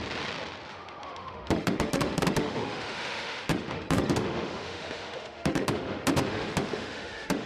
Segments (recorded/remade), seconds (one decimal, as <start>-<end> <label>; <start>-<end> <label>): 0.0-0.7 recorded; 0.7-7.5 remade